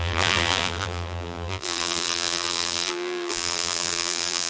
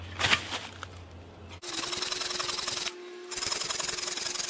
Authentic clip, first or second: second